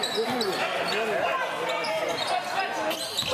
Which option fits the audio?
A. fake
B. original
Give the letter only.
B